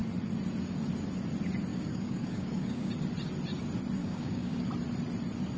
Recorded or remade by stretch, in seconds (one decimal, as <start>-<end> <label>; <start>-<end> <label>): 0.0-1.7 recorded; 1.7-2.9 remade; 2.9-4.0 recorded; 4.0-4.7 remade; 4.7-5.6 recorded